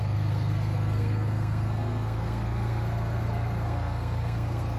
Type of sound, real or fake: fake